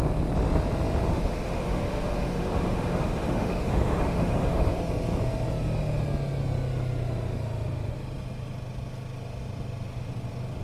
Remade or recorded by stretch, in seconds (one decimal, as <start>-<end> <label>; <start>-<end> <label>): 0.0-1.1 recorded; 1.1-4.8 remade; 4.8-10.6 recorded